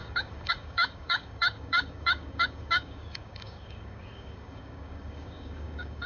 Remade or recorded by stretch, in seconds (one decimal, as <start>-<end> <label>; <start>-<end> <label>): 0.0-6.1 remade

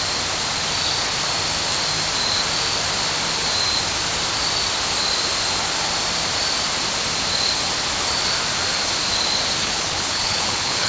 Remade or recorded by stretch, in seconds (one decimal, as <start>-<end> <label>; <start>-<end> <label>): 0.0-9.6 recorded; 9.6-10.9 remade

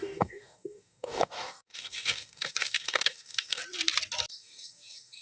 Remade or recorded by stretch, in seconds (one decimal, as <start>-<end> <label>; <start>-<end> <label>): 0.0-3.6 remade; 3.6-4.3 recorded; 4.3-5.2 remade

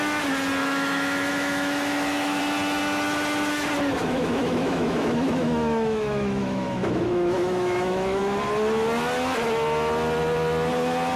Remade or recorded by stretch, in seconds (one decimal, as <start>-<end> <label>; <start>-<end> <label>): 0.0-0.6 recorded; 0.6-2.4 remade; 2.4-4.0 recorded; 4.0-8.2 remade; 8.2-11.2 recorded

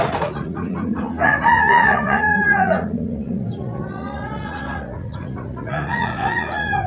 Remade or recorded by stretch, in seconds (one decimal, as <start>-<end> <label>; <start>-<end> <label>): 0.0-6.9 remade